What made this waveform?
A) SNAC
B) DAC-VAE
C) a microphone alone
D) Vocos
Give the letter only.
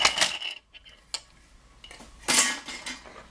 C